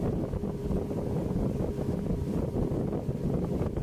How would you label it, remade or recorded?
recorded